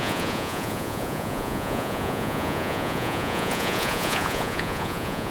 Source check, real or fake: fake